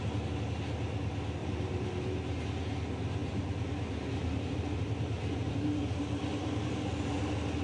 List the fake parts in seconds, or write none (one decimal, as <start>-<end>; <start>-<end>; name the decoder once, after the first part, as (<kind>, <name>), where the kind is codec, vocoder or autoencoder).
1.4-2.4 (vocoder, BigVGAN v2); 3.2-6.7